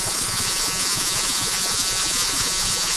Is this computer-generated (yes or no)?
yes